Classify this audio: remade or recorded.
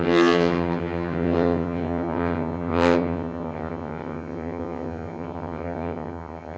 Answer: remade